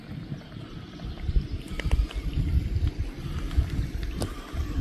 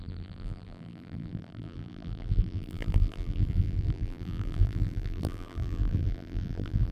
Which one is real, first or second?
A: first